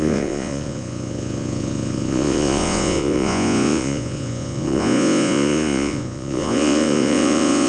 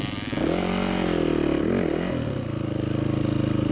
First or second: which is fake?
first